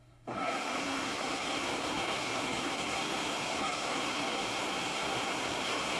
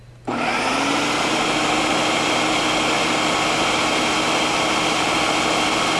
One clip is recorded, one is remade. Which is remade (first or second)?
first